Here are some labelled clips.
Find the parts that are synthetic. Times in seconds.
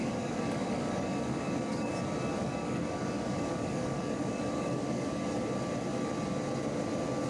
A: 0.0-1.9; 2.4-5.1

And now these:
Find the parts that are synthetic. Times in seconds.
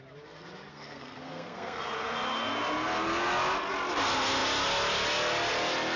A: 0.7-1.8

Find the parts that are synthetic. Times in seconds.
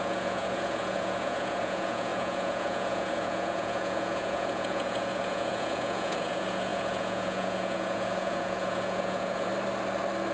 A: 0.0-9.5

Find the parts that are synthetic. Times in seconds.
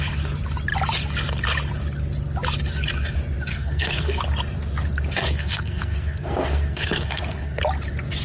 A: 3.5-4.2; 5.2-7.6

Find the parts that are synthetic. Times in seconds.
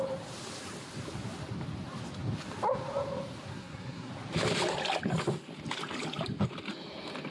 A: 3.5-4.1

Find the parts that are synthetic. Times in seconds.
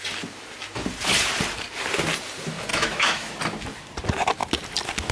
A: 2.7-3.3